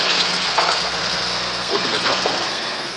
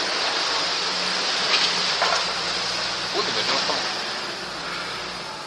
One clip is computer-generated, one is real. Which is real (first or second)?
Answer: second